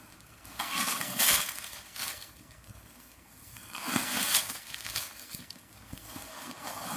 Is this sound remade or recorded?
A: remade